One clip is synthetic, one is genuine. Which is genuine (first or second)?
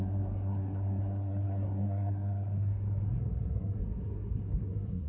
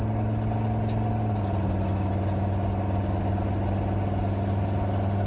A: second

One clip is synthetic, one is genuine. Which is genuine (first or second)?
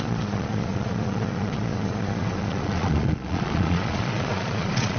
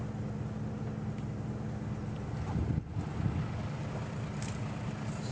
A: second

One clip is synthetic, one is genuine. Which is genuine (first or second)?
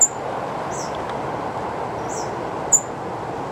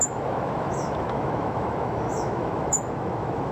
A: first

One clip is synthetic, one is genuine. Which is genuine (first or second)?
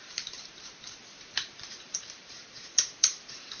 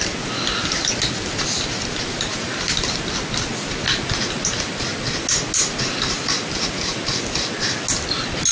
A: second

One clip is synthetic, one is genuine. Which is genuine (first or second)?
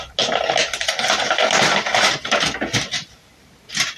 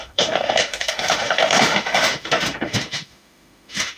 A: first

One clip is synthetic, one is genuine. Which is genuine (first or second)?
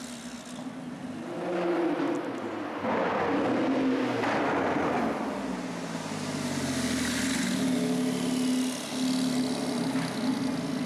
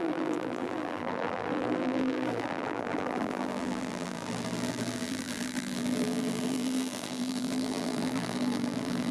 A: first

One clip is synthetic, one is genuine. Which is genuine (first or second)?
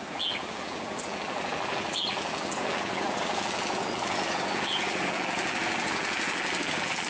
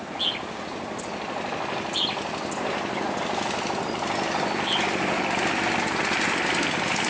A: second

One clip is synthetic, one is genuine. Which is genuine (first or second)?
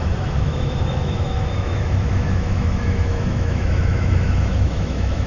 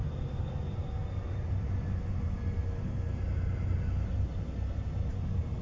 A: second